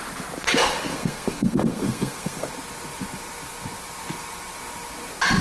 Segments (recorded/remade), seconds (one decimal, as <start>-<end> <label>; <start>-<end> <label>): 0.0-0.9 recorded; 0.9-2.5 remade; 2.5-5.4 recorded